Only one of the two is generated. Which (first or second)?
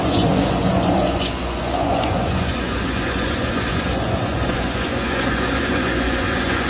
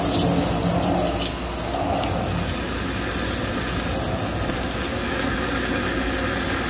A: first